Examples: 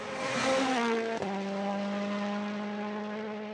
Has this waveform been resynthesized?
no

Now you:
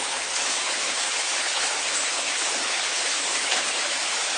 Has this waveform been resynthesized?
yes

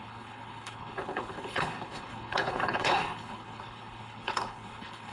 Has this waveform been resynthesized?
yes